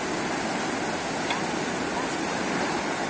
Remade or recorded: recorded